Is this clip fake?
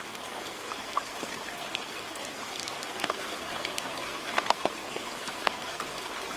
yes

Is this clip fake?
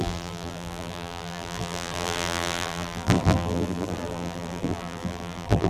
yes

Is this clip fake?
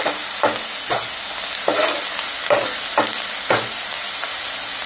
no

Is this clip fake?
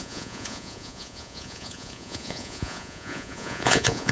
yes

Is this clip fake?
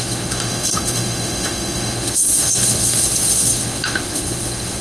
yes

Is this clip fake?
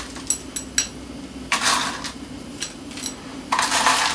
no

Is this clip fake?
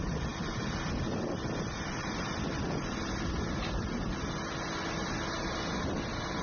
no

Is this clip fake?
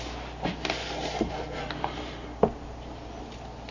no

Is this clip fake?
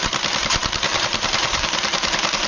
yes